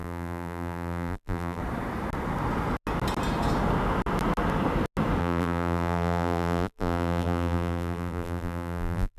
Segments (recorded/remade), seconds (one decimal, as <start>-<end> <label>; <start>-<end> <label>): 0.0-1.6 remade; 1.6-5.2 recorded; 5.2-9.2 remade